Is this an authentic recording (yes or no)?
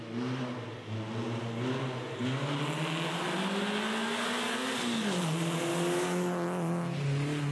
yes